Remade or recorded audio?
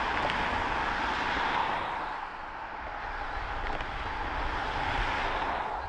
recorded